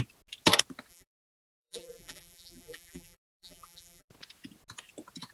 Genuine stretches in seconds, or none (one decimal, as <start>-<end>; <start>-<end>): 0.0-0.9; 4.1-5.3